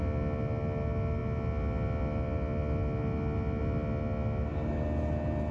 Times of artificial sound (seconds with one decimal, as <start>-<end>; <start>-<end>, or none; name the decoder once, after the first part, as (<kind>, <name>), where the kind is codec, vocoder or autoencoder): none